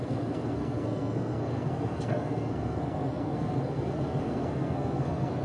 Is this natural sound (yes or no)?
no